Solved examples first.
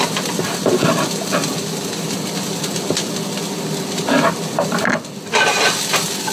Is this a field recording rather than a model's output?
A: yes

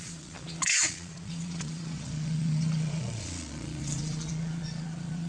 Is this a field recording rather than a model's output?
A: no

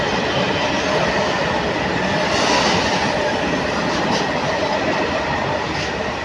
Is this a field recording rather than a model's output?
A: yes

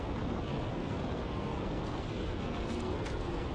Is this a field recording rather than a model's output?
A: no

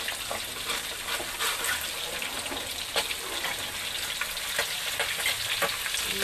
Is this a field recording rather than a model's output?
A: yes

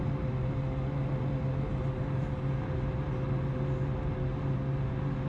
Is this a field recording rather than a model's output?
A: yes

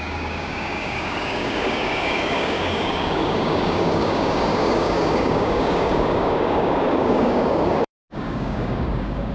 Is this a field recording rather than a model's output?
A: no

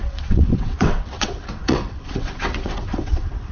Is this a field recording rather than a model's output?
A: no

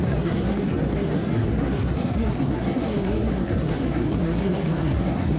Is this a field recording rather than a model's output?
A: no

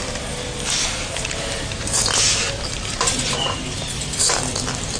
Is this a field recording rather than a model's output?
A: yes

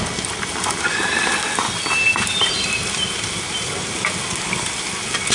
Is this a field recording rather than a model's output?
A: yes